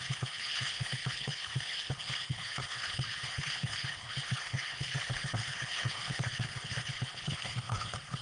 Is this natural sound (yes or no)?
no